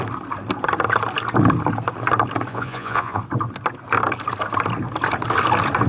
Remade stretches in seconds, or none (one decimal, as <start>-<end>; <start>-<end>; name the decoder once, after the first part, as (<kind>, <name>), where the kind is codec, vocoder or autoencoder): 2.5-3.2 (vocoder, Vocos)